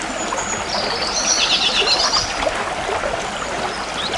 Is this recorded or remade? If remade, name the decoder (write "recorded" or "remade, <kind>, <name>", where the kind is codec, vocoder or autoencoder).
recorded